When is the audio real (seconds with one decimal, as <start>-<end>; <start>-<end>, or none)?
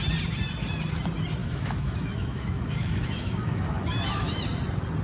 0.0-1.4; 4.4-5.0